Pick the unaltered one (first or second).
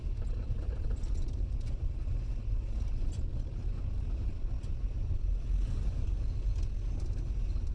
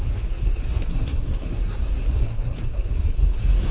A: first